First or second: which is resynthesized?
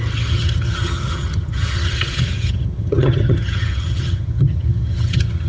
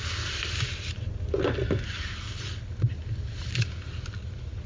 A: first